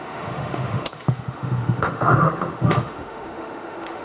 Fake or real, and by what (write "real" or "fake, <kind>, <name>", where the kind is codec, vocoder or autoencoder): fake, autoencoder, DAC-VAE